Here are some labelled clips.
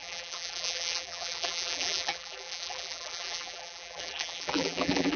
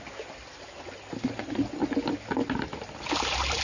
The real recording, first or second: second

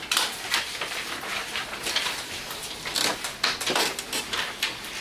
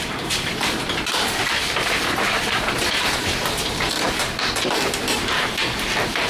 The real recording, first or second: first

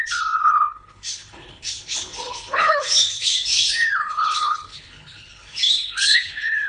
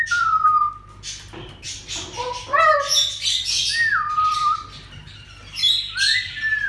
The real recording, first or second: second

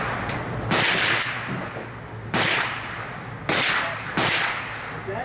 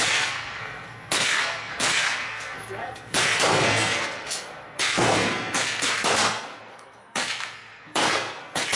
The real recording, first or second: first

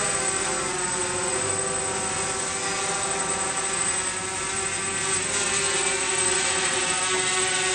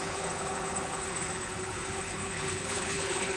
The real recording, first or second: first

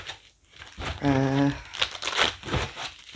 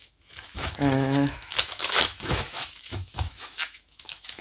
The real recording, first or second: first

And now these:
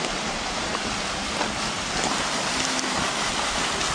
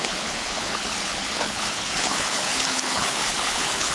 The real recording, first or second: first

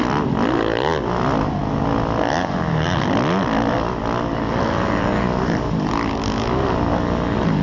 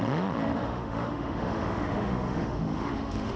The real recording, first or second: first